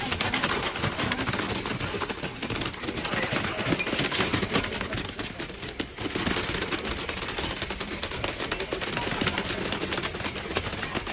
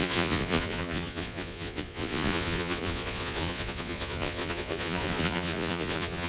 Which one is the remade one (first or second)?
second